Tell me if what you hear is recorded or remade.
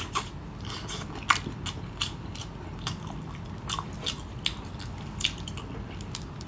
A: recorded